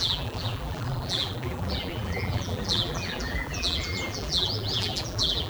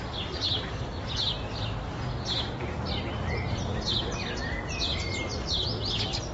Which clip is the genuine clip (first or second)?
second